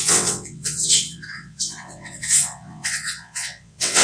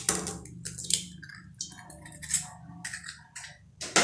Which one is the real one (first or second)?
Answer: second